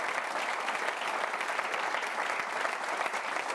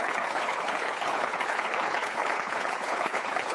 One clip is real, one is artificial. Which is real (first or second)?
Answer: first